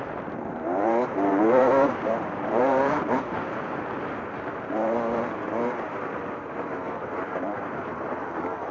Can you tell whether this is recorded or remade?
remade